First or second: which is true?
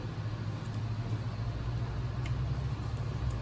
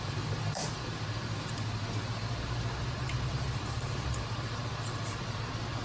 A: first